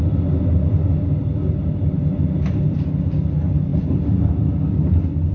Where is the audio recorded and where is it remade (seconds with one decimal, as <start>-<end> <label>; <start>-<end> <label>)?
0.0-5.3 recorded